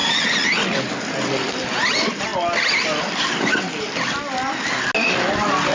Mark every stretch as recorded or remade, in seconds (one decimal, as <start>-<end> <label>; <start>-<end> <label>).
0.0-5.7 recorded